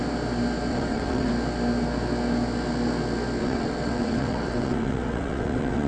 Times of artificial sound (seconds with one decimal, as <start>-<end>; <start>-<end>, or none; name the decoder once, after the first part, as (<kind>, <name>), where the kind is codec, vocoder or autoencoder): 0.7-1.3 (vocoder, WaveNeXt); 3.4-5.9